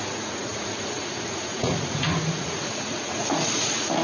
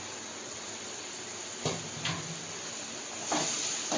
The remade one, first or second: first